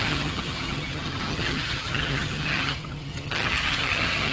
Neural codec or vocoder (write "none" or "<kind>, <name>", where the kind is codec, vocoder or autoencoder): vocoder, HiFi-GAN